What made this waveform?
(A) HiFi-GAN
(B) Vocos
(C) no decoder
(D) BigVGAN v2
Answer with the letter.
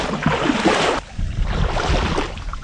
C